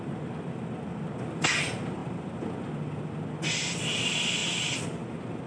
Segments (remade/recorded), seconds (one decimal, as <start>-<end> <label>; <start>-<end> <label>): 0.0-5.5 recorded

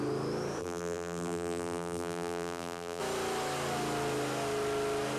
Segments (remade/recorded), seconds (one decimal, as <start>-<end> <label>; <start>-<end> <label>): 0.0-0.6 recorded; 0.6-3.0 remade; 3.0-5.2 recorded

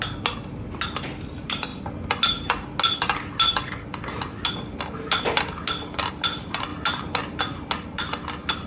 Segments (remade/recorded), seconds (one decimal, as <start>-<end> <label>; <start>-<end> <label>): 0.0-6.7 recorded; 6.7-7.4 remade; 7.4-8.7 recorded

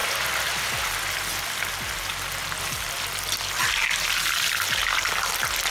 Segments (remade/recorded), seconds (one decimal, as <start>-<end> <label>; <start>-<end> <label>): 0.0-5.7 recorded

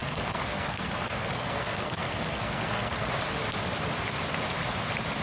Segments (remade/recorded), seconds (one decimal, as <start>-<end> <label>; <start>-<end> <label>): 0.0-3.1 remade; 3.1-5.2 recorded

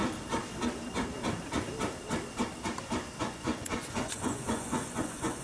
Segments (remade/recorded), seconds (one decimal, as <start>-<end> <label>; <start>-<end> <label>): 0.0-3.2 recorded; 3.2-5.4 remade